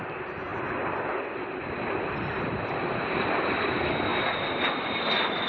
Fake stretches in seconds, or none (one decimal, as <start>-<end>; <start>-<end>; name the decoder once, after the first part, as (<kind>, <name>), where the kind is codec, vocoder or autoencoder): 0.5-3.5 (vocoder, BigVGAN v2); 4.1-4.7